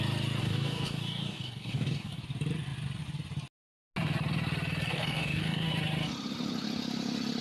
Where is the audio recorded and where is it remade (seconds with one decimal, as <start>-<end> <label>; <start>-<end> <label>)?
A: 0.0-0.4 recorded; 0.4-2.2 remade; 2.2-4.9 recorded; 4.9-5.7 remade; 5.7-7.4 recorded